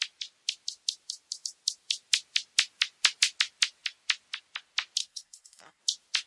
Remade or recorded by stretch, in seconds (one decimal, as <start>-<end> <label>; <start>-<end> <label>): 0.0-5.0 recorded; 5.0-5.8 remade; 5.8-6.3 recorded